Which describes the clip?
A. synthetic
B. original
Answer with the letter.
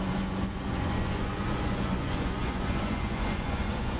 A